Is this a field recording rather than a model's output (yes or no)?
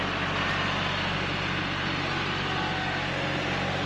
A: yes